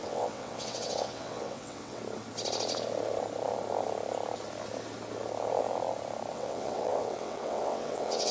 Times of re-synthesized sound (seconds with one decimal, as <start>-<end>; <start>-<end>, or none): 0.0-2.0; 6.3-8.3